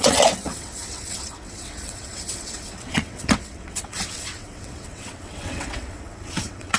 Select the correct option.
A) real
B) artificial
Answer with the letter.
B